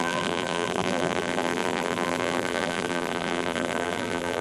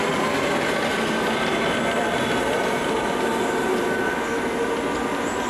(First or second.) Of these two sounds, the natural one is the second